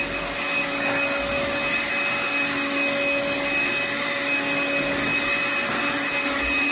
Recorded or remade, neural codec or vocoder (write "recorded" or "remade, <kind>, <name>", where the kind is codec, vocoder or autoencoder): recorded